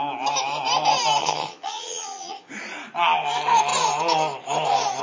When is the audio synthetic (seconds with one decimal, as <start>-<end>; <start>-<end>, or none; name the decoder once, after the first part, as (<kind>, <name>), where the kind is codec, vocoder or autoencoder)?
1.2-2.5 (vocoder, HiFi-GAN)